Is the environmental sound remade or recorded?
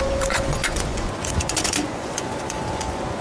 remade